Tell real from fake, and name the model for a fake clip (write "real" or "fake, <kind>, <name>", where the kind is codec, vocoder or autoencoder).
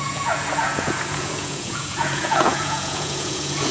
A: fake, vocoder, Vocos